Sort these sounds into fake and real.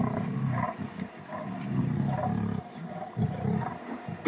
real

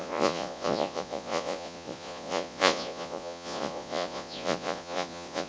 fake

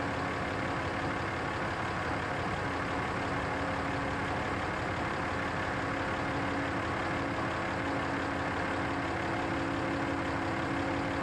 real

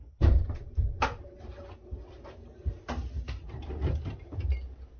real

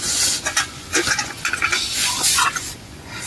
fake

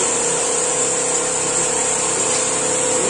real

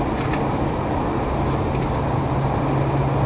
real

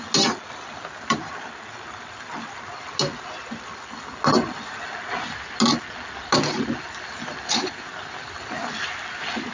real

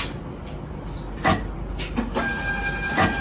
real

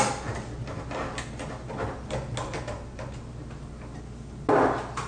real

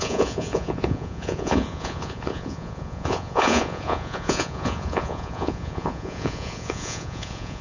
fake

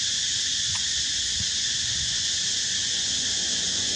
fake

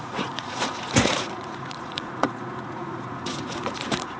fake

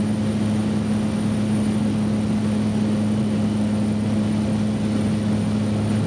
real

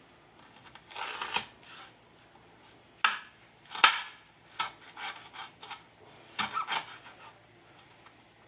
real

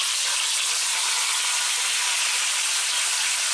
real